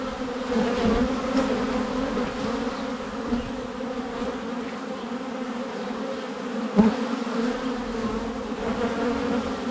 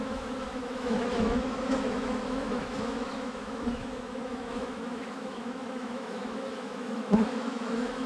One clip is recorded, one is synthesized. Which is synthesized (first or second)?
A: second